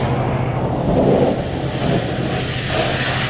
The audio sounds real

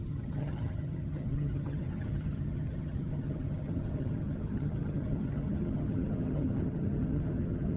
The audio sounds fake